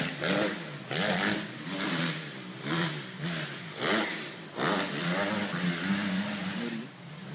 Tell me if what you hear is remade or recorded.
recorded